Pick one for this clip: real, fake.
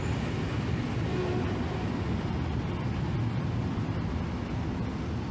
real